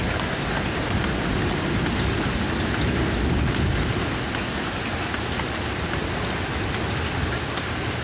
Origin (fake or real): real